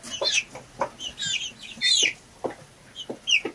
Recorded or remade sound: recorded